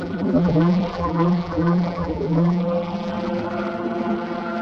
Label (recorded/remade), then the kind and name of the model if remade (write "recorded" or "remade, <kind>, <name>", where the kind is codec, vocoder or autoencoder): remade, vocoder, BigVGAN v2